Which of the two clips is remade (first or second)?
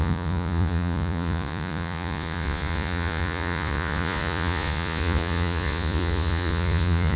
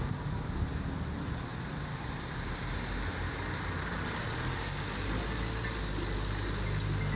first